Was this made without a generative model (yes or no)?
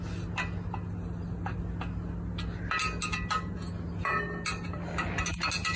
yes